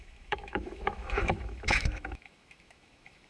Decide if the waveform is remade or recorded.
remade